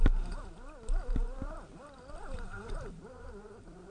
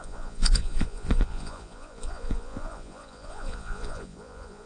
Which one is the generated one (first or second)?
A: second